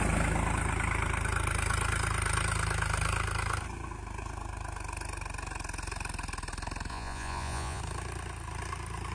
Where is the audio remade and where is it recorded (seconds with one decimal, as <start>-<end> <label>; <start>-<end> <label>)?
0.0-6.9 recorded; 6.9-7.8 remade; 7.8-9.1 recorded